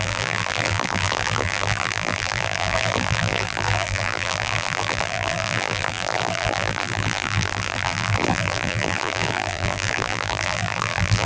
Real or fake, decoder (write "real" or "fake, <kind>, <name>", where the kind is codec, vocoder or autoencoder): fake, vocoder, BigVGAN v2